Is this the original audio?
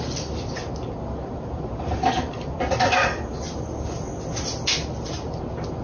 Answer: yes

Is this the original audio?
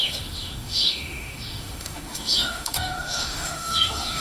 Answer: no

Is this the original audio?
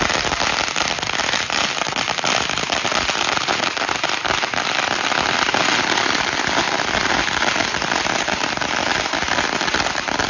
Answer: yes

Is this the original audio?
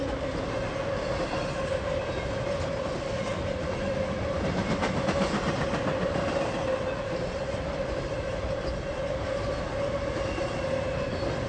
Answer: yes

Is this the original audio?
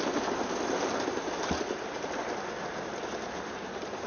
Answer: yes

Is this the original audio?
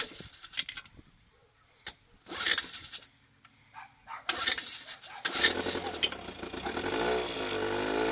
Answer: yes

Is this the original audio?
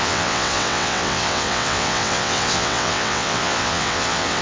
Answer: no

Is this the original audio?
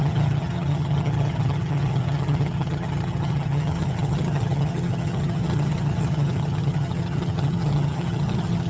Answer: no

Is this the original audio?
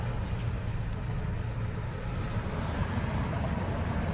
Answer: yes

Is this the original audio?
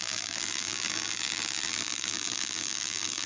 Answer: no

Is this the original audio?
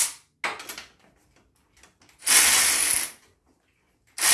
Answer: yes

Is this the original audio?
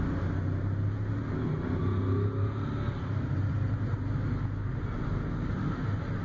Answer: yes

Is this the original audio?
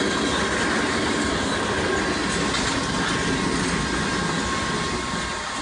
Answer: yes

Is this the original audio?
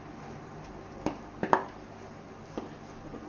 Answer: yes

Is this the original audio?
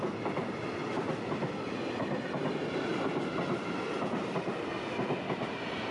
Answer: yes